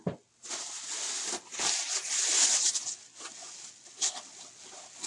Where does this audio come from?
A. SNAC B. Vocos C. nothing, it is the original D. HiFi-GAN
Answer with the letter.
C